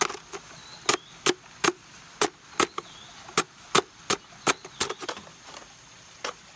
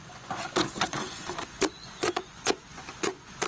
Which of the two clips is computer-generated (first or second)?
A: second